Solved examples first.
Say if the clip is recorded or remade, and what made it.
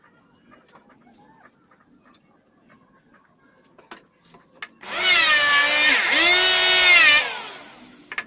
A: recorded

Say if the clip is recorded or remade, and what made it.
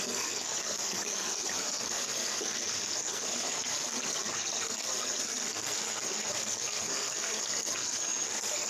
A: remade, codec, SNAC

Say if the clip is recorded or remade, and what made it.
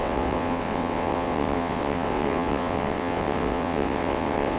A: remade, vocoder, WaveNeXt